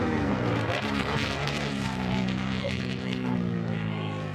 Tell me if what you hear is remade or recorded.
remade